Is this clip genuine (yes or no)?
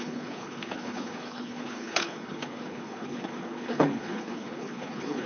no